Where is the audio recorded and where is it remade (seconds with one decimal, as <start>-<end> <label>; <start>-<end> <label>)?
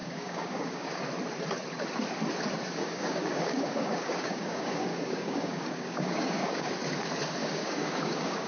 0.0-1.0 remade; 1.0-2.8 recorded; 2.8-6.7 remade; 6.7-7.4 recorded; 7.4-8.5 remade